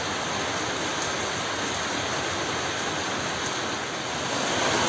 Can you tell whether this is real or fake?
real